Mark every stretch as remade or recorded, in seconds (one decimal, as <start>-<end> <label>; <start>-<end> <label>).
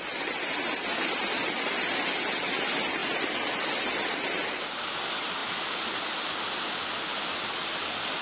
0.0-8.2 recorded